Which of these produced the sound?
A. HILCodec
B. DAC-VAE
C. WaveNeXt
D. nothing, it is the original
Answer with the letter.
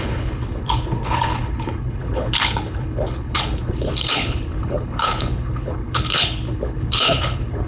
A